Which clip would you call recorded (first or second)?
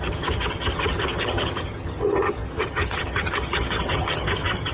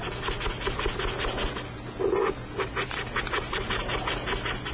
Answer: second